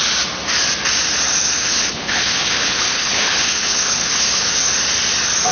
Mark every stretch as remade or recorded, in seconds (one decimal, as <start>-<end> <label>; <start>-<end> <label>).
0.0-1.4 recorded; 1.4-4.7 remade; 4.7-5.5 recorded